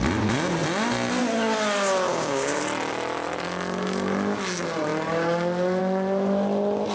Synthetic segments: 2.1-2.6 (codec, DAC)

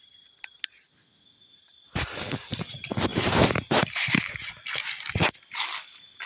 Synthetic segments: 3.1-4.5 (vocoder, BigVGAN v2)

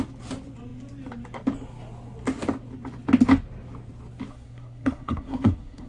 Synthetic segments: 4.3-5.9 (codec, SNAC)

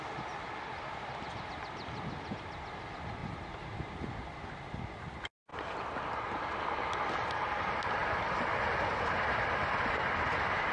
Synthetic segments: 0.0-8.0 (vocoder, BigVGAN v2); 8.9-10.7

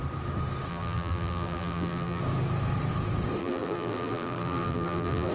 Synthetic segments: 0.7-2.2 (vocoder, BigVGAN v2); 3.4-5.3